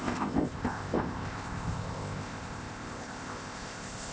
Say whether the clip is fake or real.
fake